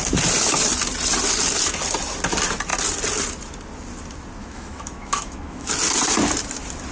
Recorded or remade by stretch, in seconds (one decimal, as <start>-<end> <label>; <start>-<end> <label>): 0.0-4.4 recorded; 4.4-5.7 remade; 5.7-6.9 recorded